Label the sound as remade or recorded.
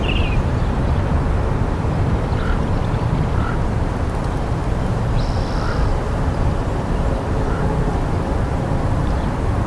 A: remade